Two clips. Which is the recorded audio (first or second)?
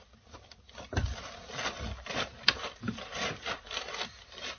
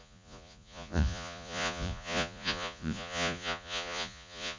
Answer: first